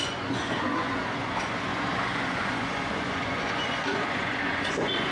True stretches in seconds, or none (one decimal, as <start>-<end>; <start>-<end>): none